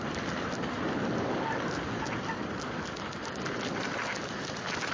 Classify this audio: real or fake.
real